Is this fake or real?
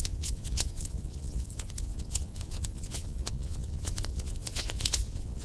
fake